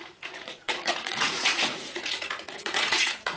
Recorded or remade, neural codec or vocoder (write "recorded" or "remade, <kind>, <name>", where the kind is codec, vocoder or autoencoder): remade, vocoder, Vocos